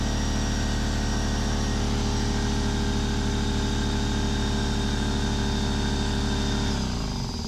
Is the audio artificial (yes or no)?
no